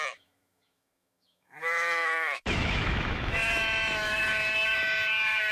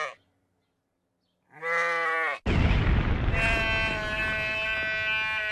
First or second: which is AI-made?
first